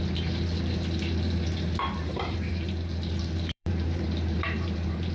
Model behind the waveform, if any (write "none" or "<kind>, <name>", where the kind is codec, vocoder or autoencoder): vocoder, BigVGAN v2